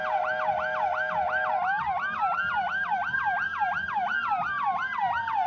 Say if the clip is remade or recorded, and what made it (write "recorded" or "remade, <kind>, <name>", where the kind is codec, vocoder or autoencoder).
recorded